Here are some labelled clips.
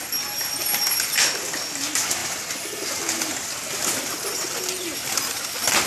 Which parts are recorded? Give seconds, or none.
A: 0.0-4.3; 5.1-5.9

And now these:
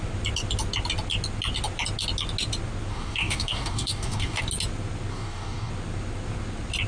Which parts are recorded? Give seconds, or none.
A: 0.0-2.9; 4.4-5.1; 5.7-6.9

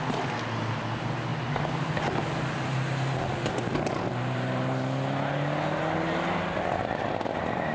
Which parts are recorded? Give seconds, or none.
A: 0.0-7.7

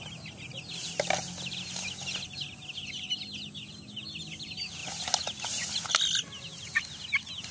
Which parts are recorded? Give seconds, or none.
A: 0.0-7.5

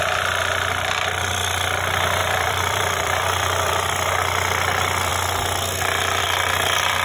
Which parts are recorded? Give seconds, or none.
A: 0.0-2.2; 4.1-7.0

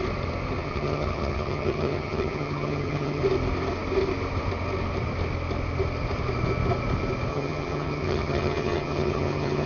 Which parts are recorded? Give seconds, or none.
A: 0.0-0.6; 3.2-7.3